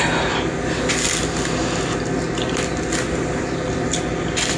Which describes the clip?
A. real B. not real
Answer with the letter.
A